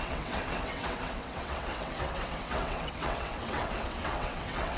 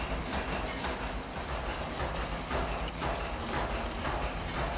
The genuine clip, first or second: second